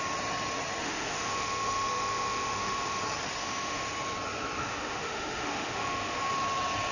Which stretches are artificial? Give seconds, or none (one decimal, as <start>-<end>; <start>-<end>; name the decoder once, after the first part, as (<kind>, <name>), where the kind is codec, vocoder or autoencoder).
0.8-3.0 (autoencoder, DAC-VAE); 3.4-3.9; 4.6-6.2